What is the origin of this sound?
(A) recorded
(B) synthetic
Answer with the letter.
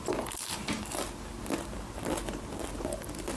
A